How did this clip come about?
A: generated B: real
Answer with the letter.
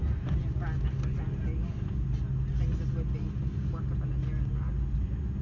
B